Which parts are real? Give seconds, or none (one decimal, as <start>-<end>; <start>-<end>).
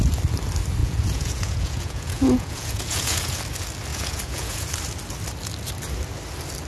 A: 0.0-0.8; 3.4-3.9; 4.7-6.7